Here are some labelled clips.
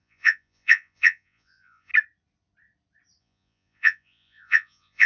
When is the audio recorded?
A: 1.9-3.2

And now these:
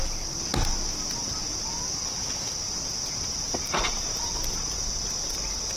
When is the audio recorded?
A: 0.0-5.8

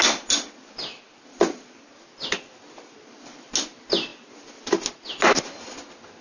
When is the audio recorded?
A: 0.0-6.2

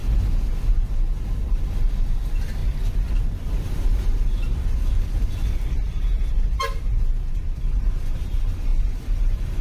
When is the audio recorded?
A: 0.0-1.3